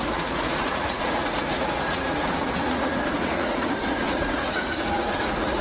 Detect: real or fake fake